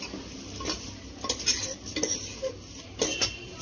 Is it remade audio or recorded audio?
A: recorded